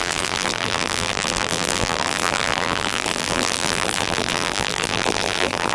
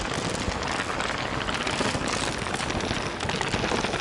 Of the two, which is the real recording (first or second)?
second